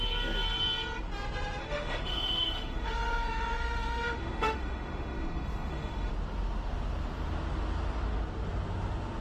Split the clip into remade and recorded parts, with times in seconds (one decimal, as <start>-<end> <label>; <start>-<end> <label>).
0.0-1.6 recorded; 1.6-6.1 remade; 6.1-9.2 recorded